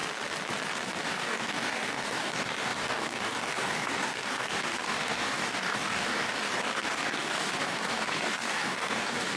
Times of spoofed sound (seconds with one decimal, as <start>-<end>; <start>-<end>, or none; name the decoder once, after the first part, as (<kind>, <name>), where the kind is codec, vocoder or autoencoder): 1.0-9.4 (codec, DAC)

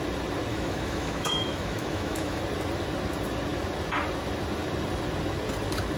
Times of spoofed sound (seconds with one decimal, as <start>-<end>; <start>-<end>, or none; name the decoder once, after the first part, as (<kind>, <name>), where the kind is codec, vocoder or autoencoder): 0.5-2.4 (autoencoder, DAC-VAE)

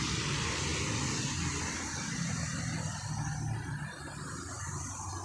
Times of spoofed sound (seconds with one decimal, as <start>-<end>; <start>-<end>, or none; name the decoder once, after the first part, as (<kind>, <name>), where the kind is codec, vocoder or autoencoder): none

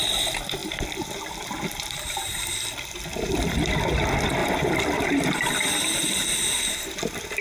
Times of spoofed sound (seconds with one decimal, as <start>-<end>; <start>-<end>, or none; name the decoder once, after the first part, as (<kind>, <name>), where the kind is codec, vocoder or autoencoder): 0.6-2.2 (vocoder, BigVGAN v2); 4.4-6.2

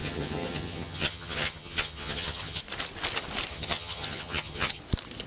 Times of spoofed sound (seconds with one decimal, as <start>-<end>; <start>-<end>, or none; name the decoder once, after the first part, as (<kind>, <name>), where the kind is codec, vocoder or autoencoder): 0.0-2.6 (vocoder, HiFi-GAN); 3.5-4.8

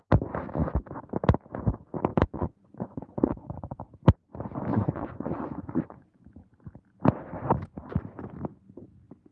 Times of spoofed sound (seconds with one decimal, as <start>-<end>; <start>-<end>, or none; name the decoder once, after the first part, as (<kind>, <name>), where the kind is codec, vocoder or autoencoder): 2.1-3.8 (vocoder, Vocos); 4.7-6.3

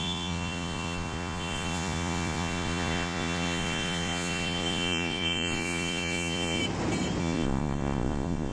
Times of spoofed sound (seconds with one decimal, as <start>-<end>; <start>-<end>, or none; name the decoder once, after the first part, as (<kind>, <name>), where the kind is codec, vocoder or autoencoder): 0.0-6.6 (vocoder, Vocos); 7.2-8.5